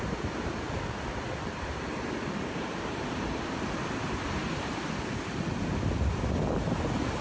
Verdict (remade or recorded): recorded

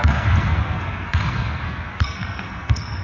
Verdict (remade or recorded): remade